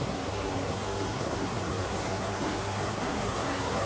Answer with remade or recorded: remade